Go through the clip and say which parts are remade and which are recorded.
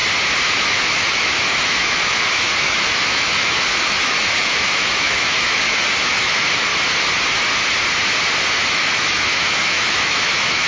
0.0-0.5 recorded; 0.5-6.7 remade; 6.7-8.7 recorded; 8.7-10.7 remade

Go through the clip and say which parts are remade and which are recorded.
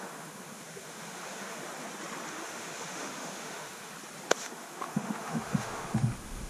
0.0-1.7 remade; 1.7-2.3 recorded; 2.3-3.9 remade; 3.9-4.4 recorded; 4.4-6.5 remade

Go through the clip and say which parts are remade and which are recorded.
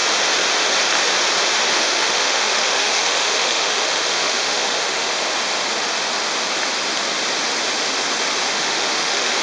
0.0-1.7 recorded; 1.7-5.1 remade; 5.1-8.5 recorded; 8.5-9.4 remade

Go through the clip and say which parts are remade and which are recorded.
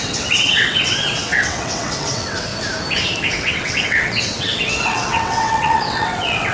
0.0-2.5 remade; 2.5-3.3 recorded; 3.3-6.5 remade